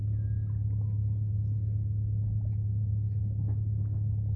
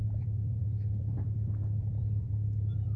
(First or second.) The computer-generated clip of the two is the second